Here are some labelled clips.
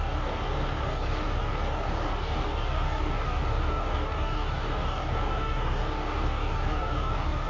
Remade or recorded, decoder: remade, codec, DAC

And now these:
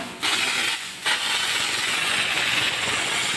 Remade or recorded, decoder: remade, vocoder, Vocos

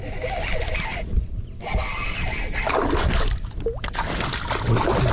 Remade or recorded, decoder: recorded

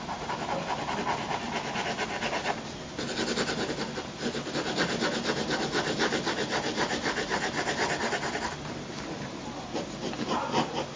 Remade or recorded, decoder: recorded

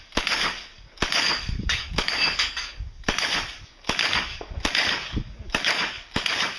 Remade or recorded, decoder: remade, codec, DAC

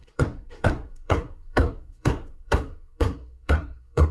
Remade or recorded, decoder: remade, codec, SNAC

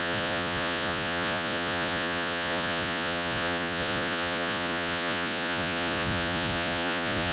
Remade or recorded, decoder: remade, vocoder, Vocos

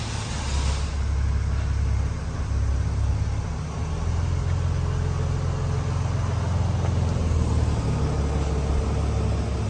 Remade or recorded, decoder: recorded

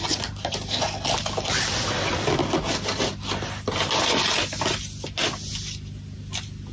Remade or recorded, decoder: recorded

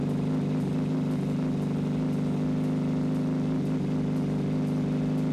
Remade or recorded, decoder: recorded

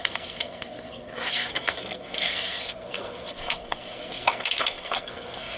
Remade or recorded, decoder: remade, codec, SNAC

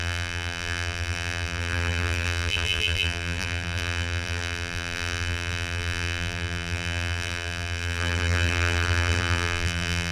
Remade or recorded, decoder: remade, vocoder, BigVGAN v2